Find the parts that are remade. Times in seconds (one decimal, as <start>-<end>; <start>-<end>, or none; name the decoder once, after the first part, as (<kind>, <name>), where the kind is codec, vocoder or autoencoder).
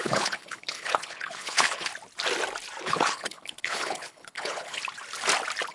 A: 0.0-1.9 (codec, HILCodec); 2.8-4.8